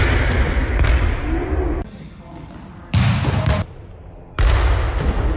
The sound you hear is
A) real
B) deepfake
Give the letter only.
A